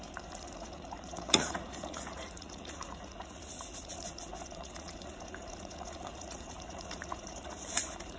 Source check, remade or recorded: remade